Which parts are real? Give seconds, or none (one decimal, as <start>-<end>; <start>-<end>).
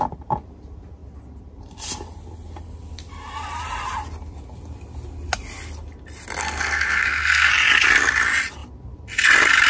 0.0-6.4; 7.5-9.7